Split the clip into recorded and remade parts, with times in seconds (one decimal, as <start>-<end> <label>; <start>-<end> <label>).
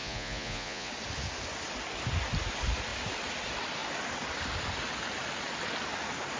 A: 0.0-0.9 remade; 0.9-6.4 recorded